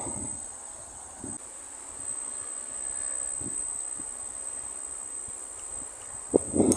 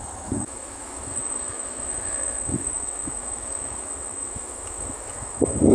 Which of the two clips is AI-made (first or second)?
second